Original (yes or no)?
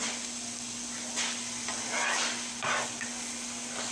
yes